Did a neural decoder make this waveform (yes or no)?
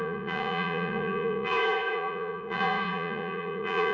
yes